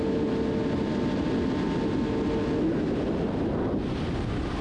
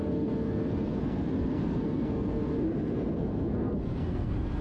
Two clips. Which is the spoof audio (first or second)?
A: second